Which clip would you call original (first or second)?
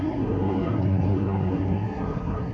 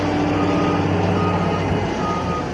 second